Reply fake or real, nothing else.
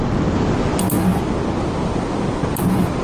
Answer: real